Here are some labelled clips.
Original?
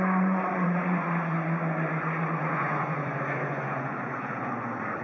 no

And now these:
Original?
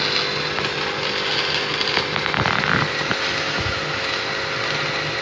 yes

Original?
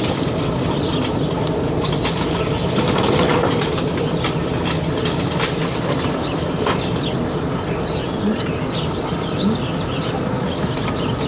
yes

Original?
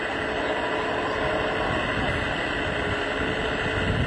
yes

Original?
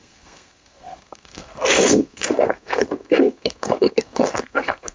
no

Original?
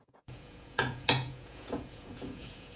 no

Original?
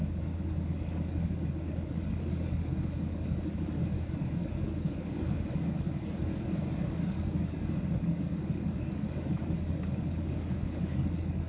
no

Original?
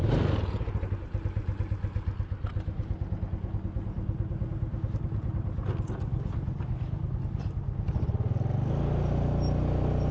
yes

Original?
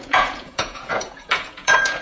no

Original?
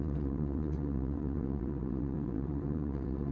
no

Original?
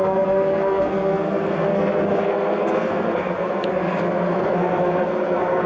no